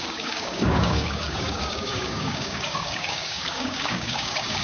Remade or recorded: remade